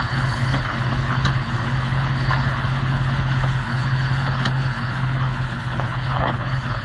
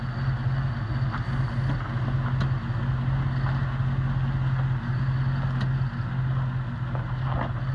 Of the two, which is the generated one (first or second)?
first